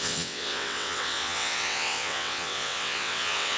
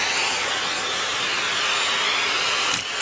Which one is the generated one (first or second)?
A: first